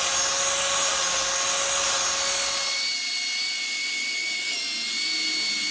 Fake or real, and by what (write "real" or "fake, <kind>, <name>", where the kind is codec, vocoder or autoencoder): real